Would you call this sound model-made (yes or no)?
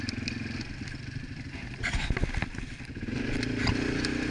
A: yes